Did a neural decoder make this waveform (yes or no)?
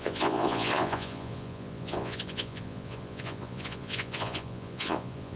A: yes